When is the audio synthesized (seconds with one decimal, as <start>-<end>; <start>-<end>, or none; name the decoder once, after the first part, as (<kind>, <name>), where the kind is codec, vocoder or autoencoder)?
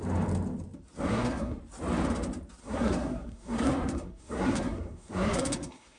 1.1-1.6 (codec, SNAC); 2.6-6.0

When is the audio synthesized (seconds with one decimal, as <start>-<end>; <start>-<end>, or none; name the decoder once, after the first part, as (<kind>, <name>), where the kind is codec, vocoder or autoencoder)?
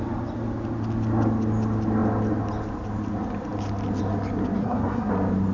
4.6-5.1 (codec, SNAC)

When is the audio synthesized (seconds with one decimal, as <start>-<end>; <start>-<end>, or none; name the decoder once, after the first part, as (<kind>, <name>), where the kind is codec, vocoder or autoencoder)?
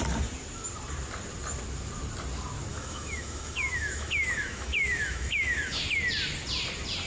2.7-5.8 (autoencoder, DAC-VAE)